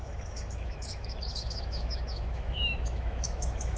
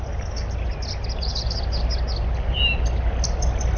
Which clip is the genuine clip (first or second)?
second